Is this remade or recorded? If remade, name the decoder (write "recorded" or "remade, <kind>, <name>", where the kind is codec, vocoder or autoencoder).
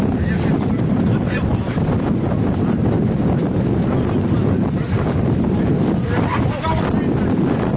remade, vocoder, BigVGAN v2